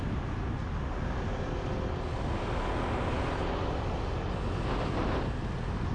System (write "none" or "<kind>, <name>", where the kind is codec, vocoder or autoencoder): none